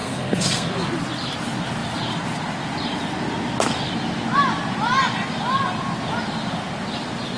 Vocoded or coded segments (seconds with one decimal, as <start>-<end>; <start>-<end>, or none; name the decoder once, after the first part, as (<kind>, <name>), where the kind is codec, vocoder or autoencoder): 0.0-0.7 (codec, SNAC)